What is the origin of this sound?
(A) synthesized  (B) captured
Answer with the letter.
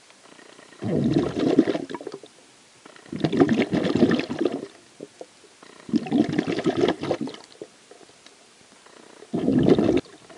B